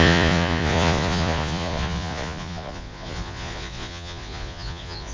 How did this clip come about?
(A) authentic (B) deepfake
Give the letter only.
B